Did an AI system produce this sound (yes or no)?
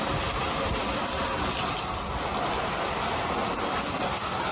no